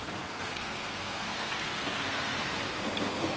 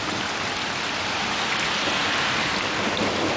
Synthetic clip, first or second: first